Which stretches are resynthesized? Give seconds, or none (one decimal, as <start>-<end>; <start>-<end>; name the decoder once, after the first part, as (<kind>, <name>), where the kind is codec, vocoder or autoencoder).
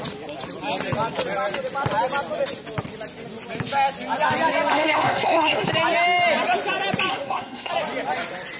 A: 4.7-5.7 (codec, SNAC); 7.1-7.7